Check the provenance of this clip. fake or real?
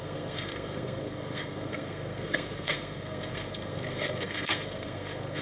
fake